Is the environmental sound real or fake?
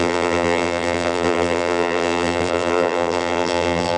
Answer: fake